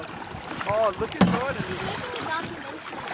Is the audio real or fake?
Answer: real